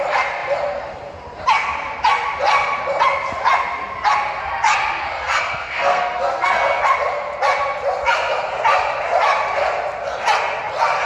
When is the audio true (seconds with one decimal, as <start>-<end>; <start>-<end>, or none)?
0.0-5.1; 6.8-11.1